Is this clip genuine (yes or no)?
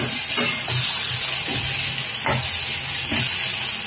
yes